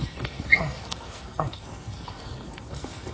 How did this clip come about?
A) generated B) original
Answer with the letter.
A